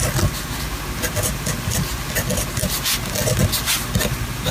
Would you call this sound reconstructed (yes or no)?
no